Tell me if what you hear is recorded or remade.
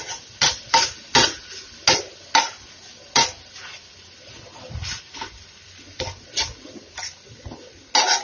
recorded